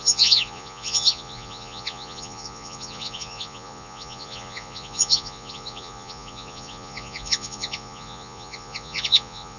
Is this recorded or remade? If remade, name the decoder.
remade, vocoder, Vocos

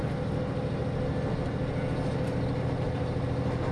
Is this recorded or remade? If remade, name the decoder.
recorded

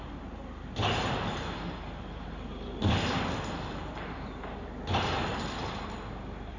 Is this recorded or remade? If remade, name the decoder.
recorded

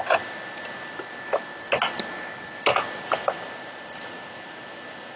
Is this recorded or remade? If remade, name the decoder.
recorded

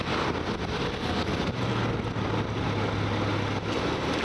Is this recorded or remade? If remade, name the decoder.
recorded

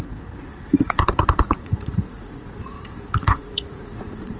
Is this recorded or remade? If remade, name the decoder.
remade, vocoder, Vocos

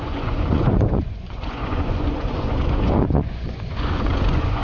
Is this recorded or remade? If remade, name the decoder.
remade, vocoder, Vocos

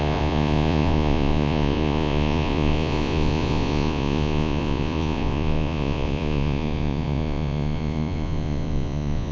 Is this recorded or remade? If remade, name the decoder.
remade, vocoder, Vocos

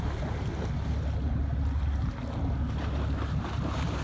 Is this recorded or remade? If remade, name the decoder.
recorded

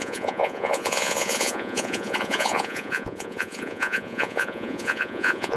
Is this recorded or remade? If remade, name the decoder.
remade, vocoder, Vocos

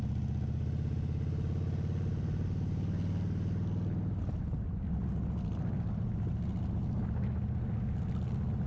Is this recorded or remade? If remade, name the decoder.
recorded